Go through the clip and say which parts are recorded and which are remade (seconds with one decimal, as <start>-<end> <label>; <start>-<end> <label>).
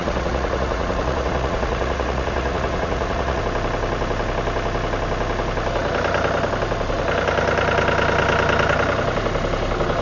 0.0-3.4 remade; 3.4-10.0 recorded